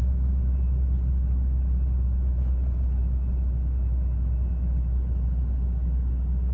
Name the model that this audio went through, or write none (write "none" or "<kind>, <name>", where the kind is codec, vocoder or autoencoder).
none